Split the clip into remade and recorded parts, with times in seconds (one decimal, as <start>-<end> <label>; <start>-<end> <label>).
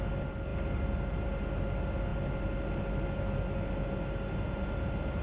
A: 0.0-5.2 recorded